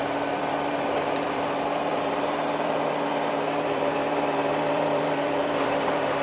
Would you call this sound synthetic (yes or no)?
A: yes